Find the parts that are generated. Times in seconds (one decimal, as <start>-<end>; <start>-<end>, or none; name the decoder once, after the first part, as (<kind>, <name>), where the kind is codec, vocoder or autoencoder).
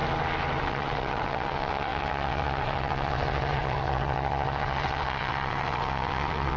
0.6-6.6 (vocoder, WaveNeXt)